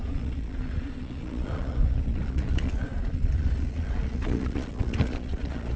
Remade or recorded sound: remade